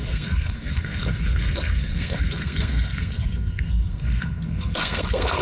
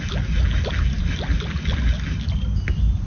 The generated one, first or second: first